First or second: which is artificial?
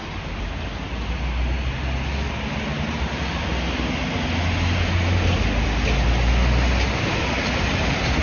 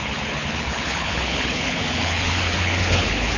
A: second